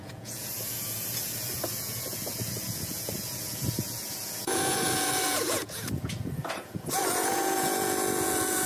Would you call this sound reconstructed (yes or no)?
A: yes